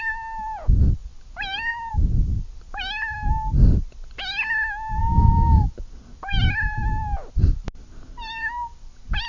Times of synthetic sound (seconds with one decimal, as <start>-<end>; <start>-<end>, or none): 5.0-5.7